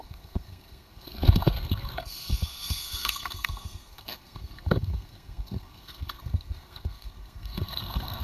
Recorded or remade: remade